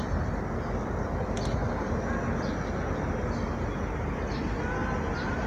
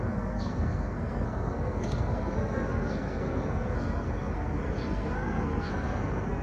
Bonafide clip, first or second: first